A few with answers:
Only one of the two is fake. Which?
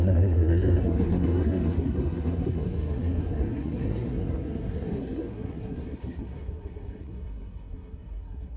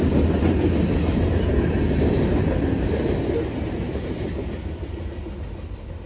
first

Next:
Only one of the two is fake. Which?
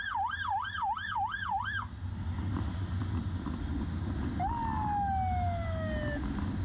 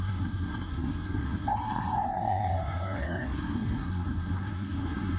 second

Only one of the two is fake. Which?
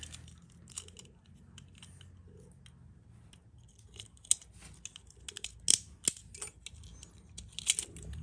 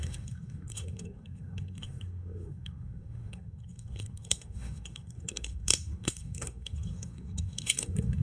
second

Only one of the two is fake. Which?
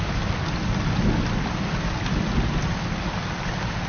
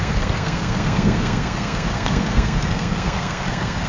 second